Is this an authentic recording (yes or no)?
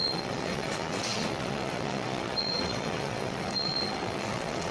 no